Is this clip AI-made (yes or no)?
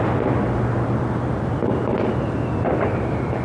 no